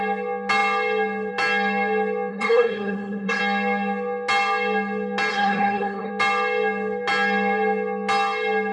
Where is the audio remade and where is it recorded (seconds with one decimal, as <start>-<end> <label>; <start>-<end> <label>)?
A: 0.0-2.3 recorded; 2.3-3.4 remade; 3.4-5.3 recorded; 5.3-6.1 remade; 6.1-8.7 recorded